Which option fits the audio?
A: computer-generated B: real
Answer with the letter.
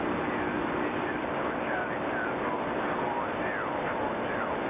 B